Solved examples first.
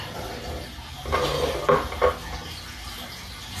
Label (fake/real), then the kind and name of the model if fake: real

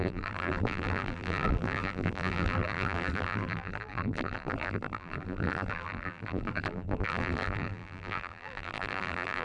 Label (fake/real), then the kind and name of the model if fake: fake, vocoder, BigVGAN v2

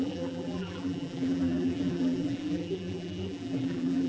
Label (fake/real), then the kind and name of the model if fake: fake, vocoder, BigVGAN v2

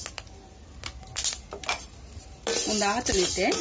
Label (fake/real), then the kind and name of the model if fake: real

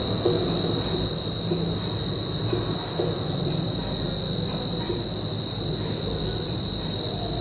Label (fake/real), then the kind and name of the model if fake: real